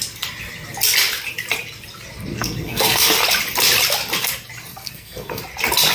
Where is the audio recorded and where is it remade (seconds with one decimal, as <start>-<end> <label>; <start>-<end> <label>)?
0.0-2.3 recorded; 2.3-3.1 remade; 3.1-4.7 recorded; 4.7-5.4 remade; 5.4-5.9 recorded